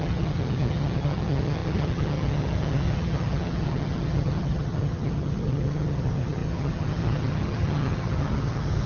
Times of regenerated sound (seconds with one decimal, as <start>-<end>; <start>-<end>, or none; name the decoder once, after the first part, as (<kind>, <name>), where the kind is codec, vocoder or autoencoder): 0.0-8.9 (vocoder, HiFi-GAN)